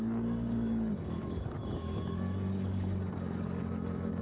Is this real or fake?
fake